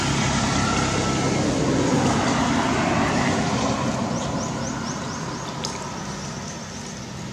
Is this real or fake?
real